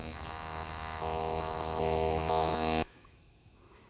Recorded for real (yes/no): no